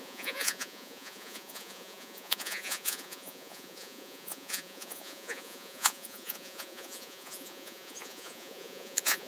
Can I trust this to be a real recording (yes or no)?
no